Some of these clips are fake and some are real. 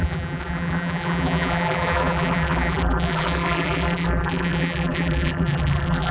fake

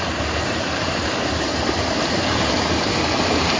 fake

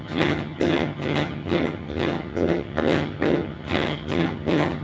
fake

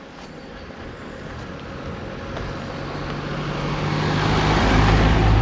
real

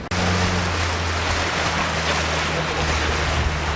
real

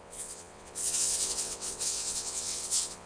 fake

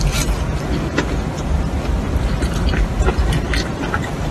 real